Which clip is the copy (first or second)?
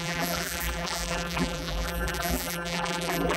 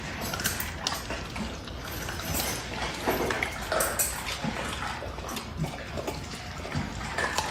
first